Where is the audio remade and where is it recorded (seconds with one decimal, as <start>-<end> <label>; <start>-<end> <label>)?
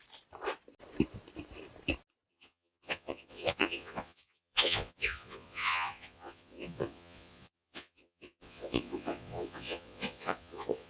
0.0-2.3 recorded; 2.3-10.9 remade